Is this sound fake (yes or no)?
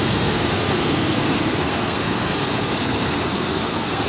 yes